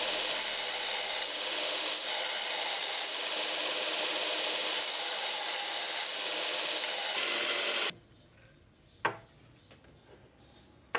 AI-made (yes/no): no